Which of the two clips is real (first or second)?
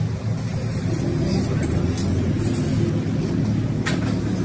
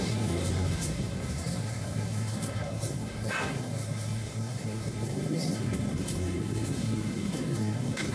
first